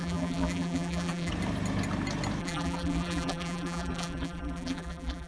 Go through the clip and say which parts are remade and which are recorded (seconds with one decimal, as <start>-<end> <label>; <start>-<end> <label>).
0.0-1.3 remade; 1.3-2.4 recorded; 2.4-5.3 remade